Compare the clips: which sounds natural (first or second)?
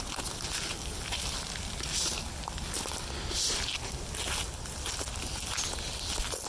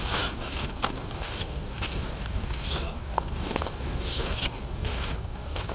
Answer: first